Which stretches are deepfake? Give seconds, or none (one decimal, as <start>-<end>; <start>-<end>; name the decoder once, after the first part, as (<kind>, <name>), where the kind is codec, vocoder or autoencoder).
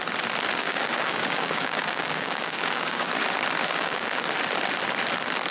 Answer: 0.6-3.1 (codec, DAC); 3.6-4.1